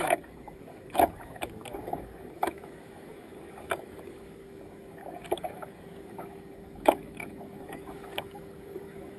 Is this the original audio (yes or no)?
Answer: no